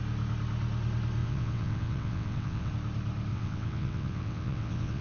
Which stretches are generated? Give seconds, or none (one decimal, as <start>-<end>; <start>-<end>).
1.2-2.7; 3.3-5.0